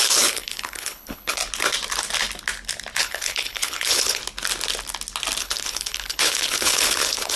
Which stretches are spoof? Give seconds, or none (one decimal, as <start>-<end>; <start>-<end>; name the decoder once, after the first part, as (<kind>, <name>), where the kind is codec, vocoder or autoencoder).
0.0-1.4 (codec, HILCodec); 3.0-4.2; 5.4-7.4